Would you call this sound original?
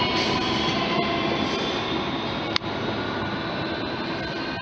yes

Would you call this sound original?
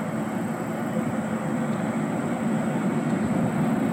yes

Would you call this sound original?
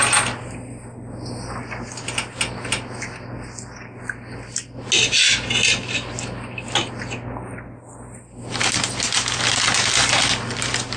yes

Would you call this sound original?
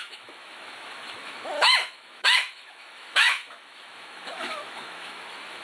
no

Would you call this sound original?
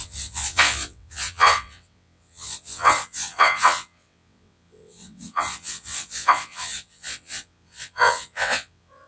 no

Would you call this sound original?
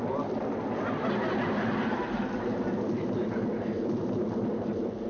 yes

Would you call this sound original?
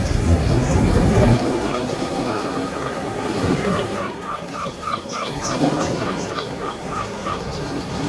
no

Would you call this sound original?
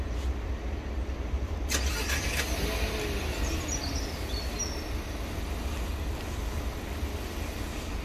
yes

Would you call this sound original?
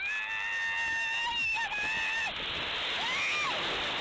yes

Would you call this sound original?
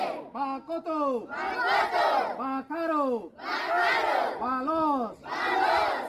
yes